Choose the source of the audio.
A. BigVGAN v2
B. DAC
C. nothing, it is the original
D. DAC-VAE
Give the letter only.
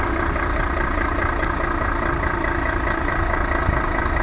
A